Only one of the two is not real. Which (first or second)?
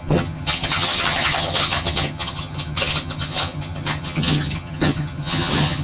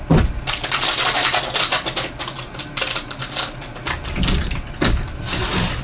first